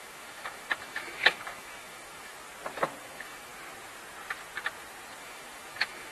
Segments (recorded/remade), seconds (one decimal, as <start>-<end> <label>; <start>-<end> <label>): 0.0-2.3 remade; 2.3-3.0 recorded; 3.0-3.5 remade; 3.5-5.2 recorded; 5.2-6.1 remade